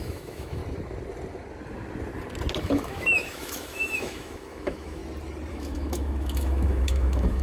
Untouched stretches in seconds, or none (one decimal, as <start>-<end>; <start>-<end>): 0.6-2.6; 5.0-5.5

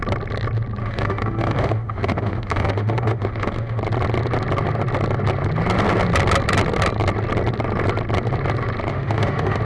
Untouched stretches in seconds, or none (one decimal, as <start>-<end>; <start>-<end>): 0.0-0.8; 3.8-8.9

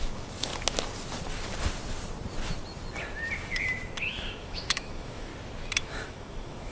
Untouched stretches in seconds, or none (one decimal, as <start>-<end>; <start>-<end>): 0.5-4.1; 5.3-5.8

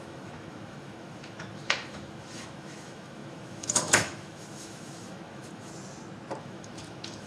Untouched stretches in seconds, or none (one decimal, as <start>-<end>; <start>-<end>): 5.7-6.4

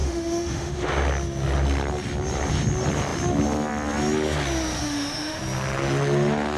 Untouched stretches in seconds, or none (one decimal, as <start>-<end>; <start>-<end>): 0.9-4.8; 5.4-6.6

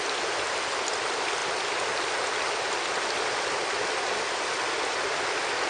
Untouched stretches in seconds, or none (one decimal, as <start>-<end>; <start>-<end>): 0.0-5.7